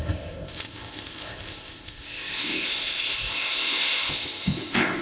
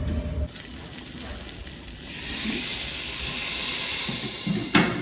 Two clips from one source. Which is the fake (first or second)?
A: first